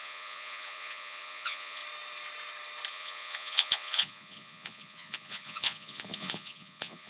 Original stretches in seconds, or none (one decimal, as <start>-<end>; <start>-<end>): 1.8-2.9